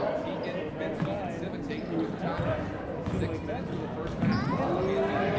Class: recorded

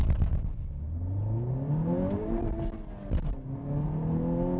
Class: recorded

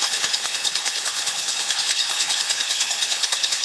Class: remade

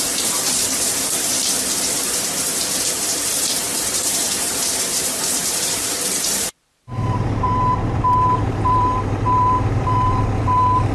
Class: remade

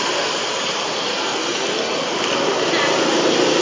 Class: recorded